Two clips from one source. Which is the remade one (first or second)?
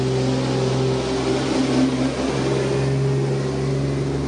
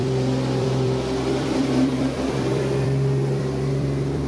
second